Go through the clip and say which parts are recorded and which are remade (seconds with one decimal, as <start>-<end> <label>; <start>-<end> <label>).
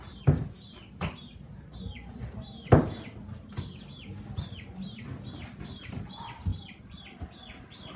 0.0-8.0 recorded